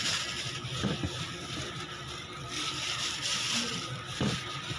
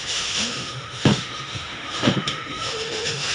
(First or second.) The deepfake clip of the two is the second